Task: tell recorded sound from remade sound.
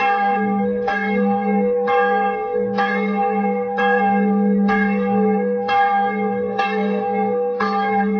remade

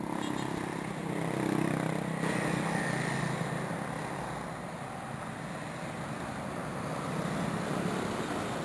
recorded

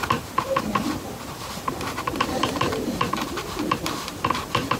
remade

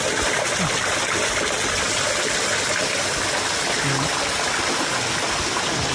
recorded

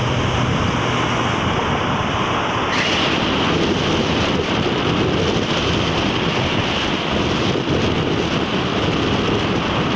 recorded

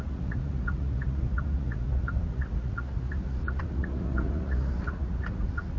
remade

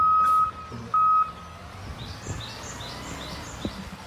recorded